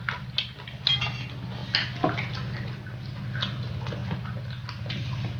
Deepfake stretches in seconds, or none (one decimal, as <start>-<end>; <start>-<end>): none